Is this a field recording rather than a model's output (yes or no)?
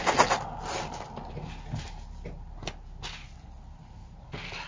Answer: yes